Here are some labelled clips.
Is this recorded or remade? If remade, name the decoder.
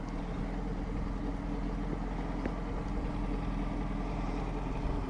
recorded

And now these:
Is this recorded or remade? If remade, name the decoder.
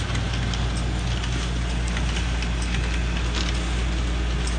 recorded